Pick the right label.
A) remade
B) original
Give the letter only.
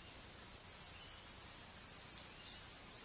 B